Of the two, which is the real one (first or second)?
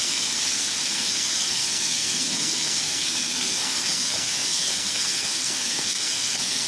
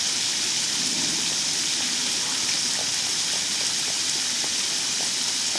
second